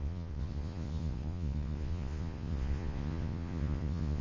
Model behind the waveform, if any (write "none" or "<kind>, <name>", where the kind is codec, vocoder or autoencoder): vocoder, Vocos